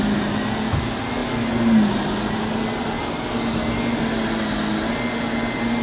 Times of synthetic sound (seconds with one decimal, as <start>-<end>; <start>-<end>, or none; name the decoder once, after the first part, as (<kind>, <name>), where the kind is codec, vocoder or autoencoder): none